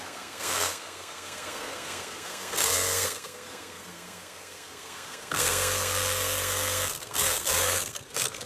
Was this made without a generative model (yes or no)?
no